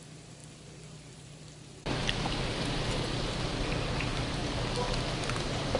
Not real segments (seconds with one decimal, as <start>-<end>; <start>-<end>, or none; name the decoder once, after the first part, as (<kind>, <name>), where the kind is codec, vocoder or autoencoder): 0.0-4.4 (vocoder, BigVGAN v2); 5.2-5.8